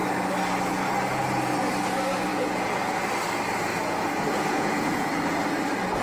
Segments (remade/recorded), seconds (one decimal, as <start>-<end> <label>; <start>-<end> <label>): 0.0-2.3 recorded; 2.3-3.0 remade; 3.0-3.7 recorded; 3.7-5.1 remade; 5.1-6.0 recorded